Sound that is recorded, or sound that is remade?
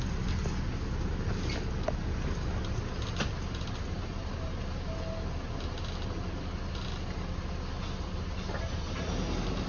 recorded